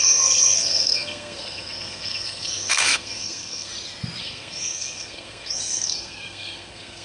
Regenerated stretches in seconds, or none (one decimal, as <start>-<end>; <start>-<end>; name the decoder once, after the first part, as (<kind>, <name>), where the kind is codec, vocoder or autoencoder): 0.0-3.7 (codec, SNAC); 4.2-7.0